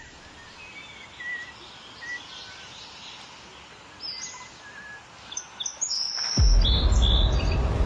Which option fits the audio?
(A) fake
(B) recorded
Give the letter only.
B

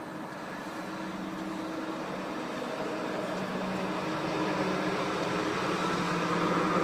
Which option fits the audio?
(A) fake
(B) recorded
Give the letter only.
B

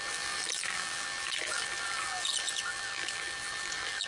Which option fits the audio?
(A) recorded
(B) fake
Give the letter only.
B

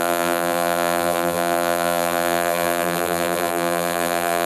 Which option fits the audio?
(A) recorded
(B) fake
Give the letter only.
B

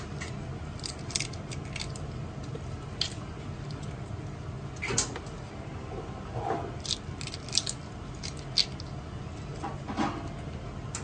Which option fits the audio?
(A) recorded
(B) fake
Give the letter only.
A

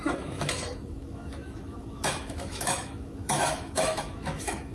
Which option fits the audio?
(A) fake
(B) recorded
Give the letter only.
A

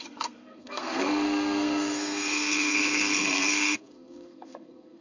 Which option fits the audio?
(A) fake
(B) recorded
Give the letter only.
A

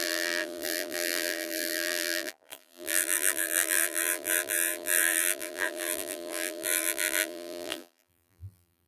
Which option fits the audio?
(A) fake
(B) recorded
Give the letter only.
A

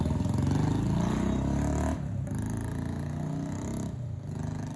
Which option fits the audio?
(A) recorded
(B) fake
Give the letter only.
A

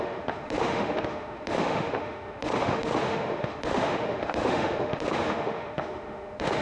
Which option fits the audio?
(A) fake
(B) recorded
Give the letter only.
A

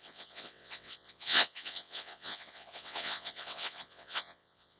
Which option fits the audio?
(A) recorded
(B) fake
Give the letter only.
B